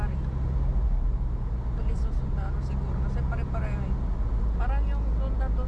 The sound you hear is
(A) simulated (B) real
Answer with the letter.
B